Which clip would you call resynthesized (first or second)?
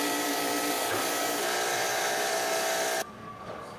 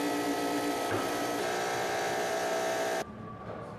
first